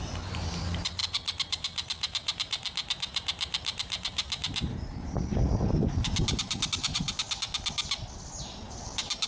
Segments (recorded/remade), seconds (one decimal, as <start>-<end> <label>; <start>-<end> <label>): 0.0-7.0 remade; 7.0-8.6 recorded; 8.6-9.3 remade